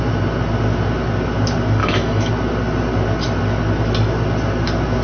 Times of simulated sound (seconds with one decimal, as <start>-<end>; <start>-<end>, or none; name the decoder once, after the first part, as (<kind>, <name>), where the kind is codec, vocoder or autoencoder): 1.8-2.3 (autoencoder, DAC-VAE)

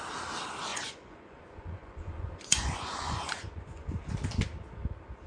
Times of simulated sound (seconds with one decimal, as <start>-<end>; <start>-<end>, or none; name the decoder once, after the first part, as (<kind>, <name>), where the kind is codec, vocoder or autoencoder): 0.7-3.9 (vocoder, Vocos)

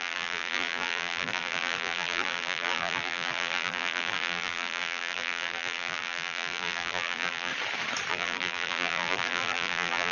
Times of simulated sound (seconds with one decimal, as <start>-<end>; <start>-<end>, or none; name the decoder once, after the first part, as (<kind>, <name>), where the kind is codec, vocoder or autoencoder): 0.0-7.5 (vocoder, BigVGAN v2); 8.1-10.1